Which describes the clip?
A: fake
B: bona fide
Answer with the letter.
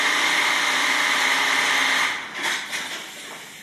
B